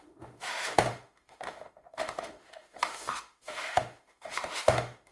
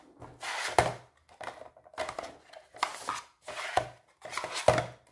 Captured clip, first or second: second